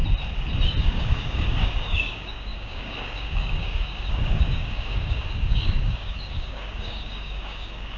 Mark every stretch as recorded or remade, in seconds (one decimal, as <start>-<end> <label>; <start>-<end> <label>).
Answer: 0.0-0.8 recorded; 0.8-8.0 remade